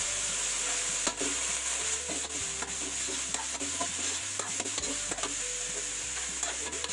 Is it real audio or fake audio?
real